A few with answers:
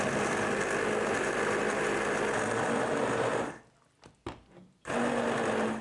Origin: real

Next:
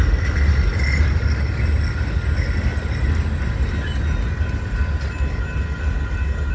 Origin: real